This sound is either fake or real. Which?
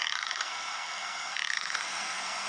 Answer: fake